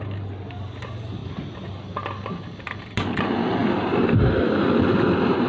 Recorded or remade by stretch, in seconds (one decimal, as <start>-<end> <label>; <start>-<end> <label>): 0.0-5.5 recorded